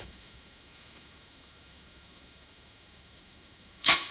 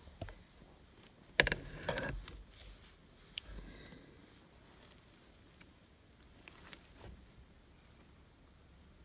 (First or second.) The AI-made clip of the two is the first